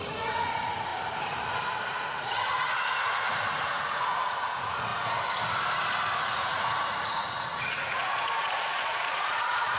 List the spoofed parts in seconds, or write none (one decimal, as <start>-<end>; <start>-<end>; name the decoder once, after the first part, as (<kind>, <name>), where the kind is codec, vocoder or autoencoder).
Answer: 0.0-0.9 (vocoder, Vocos); 1.9-4.9; 6.2-9.8